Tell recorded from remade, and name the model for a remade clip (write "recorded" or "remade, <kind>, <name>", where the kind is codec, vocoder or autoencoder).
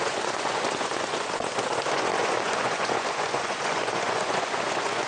remade, vocoder, Vocos